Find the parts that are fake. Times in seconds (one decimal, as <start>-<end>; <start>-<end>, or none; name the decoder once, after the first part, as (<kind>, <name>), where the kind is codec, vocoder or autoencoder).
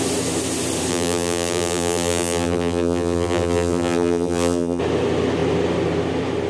0.9-4.8 (vocoder, BigVGAN v2)